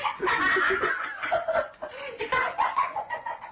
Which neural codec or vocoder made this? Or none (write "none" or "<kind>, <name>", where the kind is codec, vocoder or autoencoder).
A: vocoder, Vocos